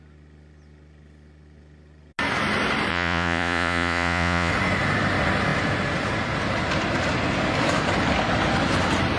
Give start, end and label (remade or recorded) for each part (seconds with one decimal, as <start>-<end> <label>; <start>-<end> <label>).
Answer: 0.0-2.9 recorded; 2.9-4.5 remade; 4.5-9.2 recorded

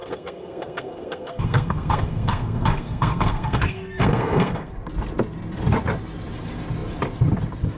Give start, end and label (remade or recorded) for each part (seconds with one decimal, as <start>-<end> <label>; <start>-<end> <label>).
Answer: 0.0-4.7 remade; 4.7-7.8 recorded